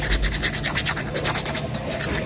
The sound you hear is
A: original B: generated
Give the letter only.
A